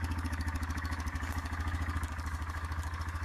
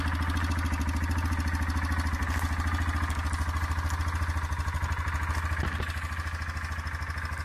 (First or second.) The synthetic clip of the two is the first